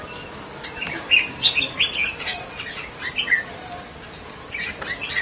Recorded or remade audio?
recorded